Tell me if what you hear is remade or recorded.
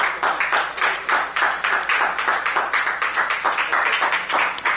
recorded